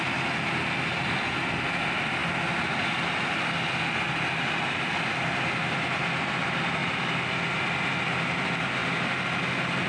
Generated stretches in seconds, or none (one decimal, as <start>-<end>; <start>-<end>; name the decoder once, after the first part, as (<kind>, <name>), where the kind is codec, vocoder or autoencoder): none